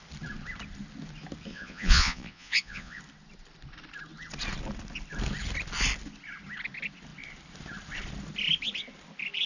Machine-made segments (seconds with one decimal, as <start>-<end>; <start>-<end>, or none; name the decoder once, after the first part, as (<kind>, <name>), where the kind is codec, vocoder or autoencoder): 1.5-3.0 (vocoder, Vocos)